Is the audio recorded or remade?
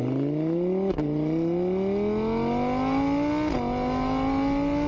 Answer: recorded